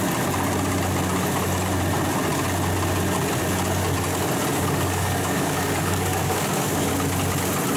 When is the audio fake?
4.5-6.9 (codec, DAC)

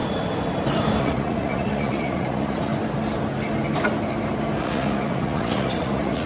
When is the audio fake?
1.0-2.7 (vocoder, Vocos); 4.6-6.3